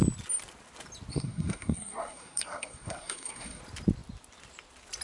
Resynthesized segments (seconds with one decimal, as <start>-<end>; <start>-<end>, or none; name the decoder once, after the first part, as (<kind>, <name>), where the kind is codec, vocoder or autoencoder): 1.1-3.6 (codec, SNAC)

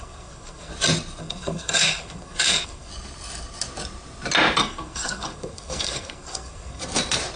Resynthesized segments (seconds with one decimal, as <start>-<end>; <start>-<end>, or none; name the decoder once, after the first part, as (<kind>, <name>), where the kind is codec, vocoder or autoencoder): 0.0-0.7 (codec, SNAC); 1.2-2.9; 4.6-6.8

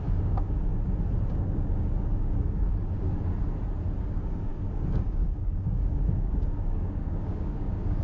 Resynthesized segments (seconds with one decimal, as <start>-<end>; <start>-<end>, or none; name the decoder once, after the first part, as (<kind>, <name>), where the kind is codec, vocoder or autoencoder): 0.0-0.7 (codec, DAC); 1.3-2.7; 4.0-8.0

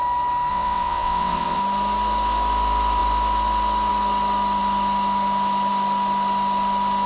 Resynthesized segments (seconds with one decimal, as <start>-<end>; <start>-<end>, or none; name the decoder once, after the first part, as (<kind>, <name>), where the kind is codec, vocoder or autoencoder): 0.5-1.6 (vocoder, WaveNeXt)

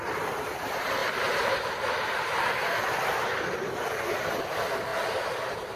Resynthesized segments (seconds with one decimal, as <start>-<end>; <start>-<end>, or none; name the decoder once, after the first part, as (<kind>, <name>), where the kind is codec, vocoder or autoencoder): 1.0-2.5 (vocoder, BigVGAN v2); 4.9-5.8